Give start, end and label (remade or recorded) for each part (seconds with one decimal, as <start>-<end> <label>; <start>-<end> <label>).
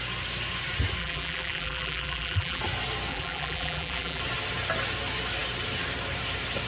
0.0-1.0 recorded; 1.0-2.6 remade; 2.6-3.1 recorded; 3.1-4.2 remade; 4.2-6.7 recorded